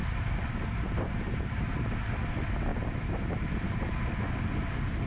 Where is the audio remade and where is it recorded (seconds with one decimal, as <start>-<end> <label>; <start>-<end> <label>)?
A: 0.0-2.2 remade; 2.2-2.7 recorded; 2.7-3.5 remade; 3.5-5.1 recorded